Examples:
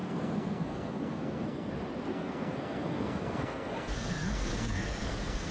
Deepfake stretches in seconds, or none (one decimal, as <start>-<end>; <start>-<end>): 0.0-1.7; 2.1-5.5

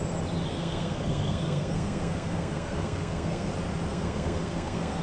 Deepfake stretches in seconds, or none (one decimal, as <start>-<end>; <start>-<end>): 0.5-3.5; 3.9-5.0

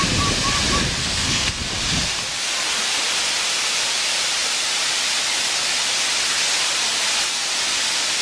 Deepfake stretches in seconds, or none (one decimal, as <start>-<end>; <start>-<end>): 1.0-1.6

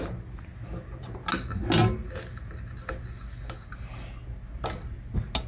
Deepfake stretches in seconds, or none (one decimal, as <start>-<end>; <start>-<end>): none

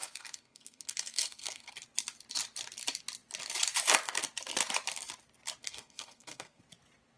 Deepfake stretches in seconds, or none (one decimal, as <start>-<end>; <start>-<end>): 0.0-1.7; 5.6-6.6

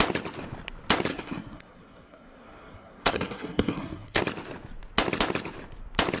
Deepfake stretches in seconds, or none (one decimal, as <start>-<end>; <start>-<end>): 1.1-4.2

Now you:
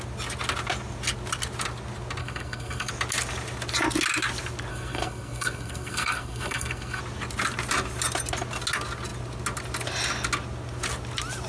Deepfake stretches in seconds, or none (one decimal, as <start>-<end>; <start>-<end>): 2.2-2.9; 4.7-7.0

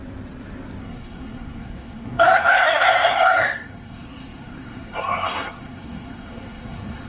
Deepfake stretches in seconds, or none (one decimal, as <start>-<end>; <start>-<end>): 0.8-7.1